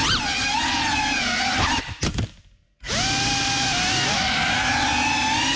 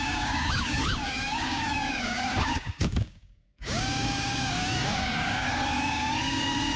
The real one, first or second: first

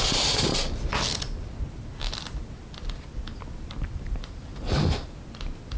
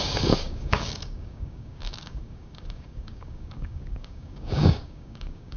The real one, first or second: first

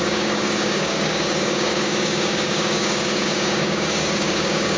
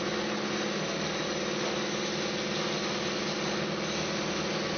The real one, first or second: second